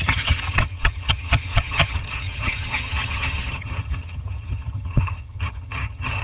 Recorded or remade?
remade